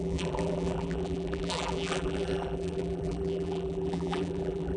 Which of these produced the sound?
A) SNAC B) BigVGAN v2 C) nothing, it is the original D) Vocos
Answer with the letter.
B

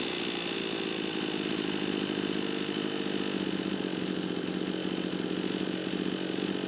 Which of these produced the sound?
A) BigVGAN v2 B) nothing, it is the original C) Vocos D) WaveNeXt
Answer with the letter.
B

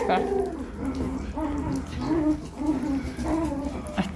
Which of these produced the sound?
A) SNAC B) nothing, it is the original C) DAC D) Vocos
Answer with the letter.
B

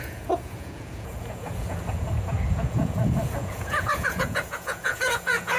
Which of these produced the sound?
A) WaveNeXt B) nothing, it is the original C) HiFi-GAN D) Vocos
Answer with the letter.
D